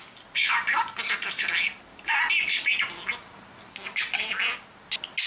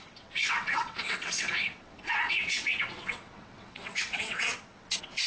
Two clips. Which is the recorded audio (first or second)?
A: first